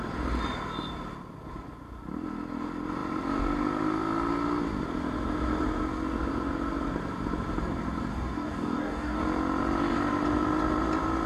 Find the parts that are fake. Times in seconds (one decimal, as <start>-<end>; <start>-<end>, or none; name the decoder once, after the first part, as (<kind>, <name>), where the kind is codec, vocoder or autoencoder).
8.1-9.2 (codec, DAC)